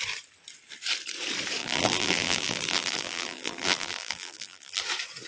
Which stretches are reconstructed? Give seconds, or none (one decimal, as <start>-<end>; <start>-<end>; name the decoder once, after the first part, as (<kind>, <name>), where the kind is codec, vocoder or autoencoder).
1.6-4.8 (vocoder, BigVGAN v2)